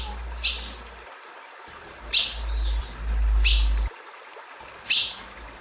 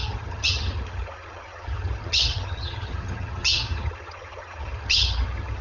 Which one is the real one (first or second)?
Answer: first